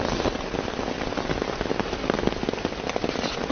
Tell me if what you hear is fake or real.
real